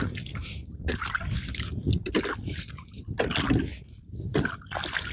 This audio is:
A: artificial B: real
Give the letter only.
B